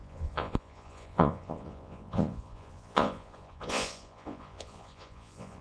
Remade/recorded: remade